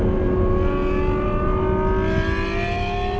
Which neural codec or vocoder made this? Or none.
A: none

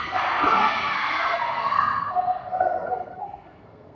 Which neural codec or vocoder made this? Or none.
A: codec, SNAC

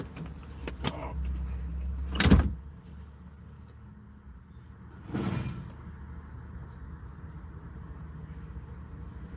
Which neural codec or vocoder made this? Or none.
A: none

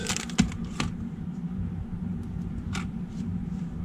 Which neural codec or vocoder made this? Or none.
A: none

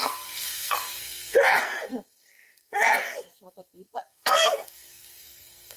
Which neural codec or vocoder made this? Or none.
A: codec, SNAC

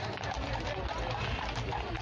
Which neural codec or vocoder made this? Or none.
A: none